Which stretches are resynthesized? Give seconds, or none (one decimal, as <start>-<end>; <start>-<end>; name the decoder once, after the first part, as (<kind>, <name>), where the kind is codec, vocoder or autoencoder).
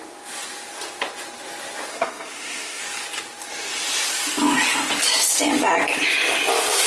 1.9-2.8 (codec, SNAC)